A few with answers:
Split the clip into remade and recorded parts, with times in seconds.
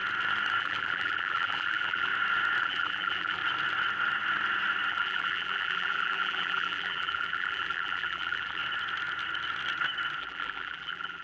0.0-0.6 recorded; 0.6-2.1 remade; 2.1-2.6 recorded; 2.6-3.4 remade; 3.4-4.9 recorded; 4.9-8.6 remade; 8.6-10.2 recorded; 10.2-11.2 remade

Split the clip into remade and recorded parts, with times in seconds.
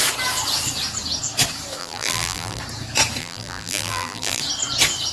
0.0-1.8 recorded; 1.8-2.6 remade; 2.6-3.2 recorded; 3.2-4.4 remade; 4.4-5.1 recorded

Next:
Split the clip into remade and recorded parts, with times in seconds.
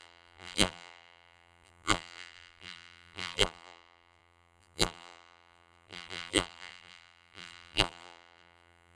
0.0-9.0 remade